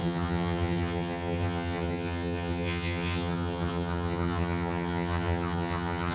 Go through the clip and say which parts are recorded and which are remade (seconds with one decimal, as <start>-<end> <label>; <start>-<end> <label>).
0.0-6.1 remade